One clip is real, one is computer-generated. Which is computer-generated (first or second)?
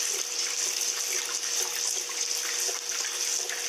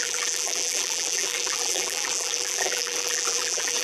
second